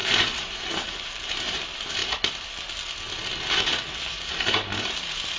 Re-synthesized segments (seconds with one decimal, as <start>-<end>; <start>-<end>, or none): 0.0-2.0; 4.1-5.4